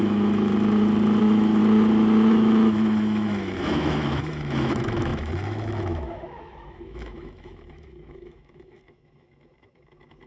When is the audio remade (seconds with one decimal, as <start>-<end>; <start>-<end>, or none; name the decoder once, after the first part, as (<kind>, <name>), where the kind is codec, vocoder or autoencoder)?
0.0-0.5 (autoencoder, DAC-VAE); 1.2-1.6; 2.3-10.3